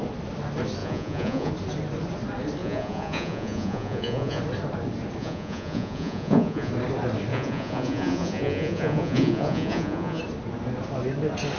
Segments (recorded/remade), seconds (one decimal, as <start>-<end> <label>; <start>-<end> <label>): 0.0-0.8 recorded; 0.8-1.5 remade; 1.5-2.6 recorded; 2.6-4.4 remade; 4.4-5.2 recorded; 5.2-6.7 remade; 6.7-7.3 recorded; 7.3-10.2 remade; 10.2-11.6 recorded